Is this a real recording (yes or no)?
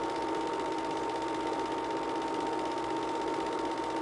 yes